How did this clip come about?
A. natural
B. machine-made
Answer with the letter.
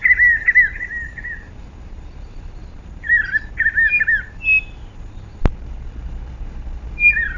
A